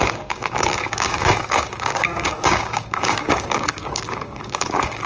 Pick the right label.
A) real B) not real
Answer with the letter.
B